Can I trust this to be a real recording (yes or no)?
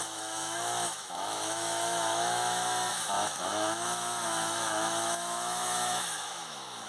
no